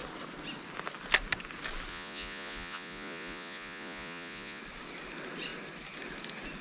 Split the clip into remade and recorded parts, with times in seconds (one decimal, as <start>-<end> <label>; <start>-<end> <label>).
0.0-1.9 recorded; 1.9-4.6 remade; 4.6-6.6 recorded

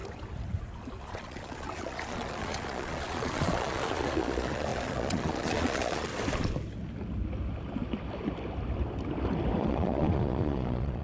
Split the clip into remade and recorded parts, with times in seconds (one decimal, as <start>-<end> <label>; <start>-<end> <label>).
0.0-1.0 recorded; 1.0-6.1 remade; 6.1-9.6 recorded; 9.6-11.0 remade

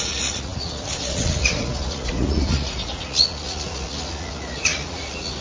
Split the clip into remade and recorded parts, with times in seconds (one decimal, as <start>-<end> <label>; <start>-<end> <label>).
0.0-5.4 remade

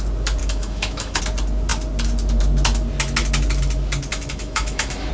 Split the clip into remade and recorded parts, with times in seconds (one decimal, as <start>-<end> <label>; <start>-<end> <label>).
0.0-0.4 recorded; 0.4-1.2 remade; 1.2-4.1 recorded; 4.1-5.1 remade